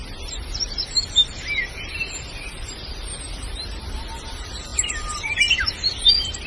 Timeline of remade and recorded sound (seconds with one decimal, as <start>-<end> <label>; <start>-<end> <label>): 0.0-6.5 remade